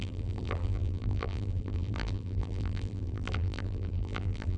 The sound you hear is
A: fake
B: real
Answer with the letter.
A